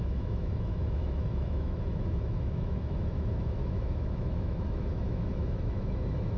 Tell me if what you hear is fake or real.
fake